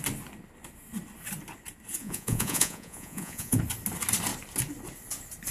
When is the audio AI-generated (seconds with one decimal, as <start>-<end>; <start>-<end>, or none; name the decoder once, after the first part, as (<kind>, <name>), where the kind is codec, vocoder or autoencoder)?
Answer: 2.0-3.6 (vocoder, Vocos)